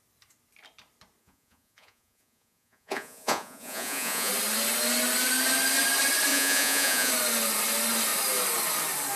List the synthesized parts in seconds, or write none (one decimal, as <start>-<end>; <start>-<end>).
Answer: 1.2-4.3; 6.3-7.1